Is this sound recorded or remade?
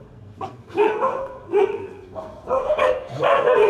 remade